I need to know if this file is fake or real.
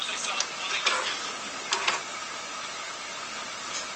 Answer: real